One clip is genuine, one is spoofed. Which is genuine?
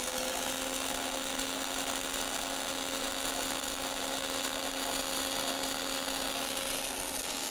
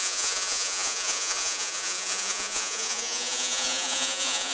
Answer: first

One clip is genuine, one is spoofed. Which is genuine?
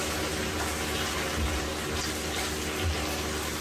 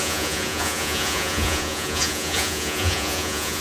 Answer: first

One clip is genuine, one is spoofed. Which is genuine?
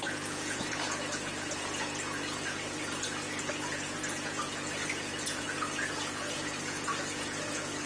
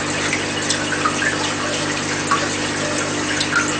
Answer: second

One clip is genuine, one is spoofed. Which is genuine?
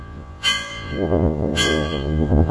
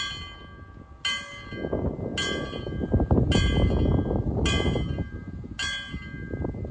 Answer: second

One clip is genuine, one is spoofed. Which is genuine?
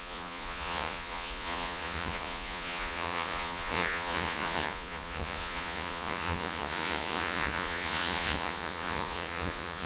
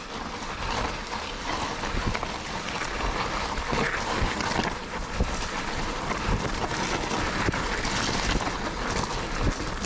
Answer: second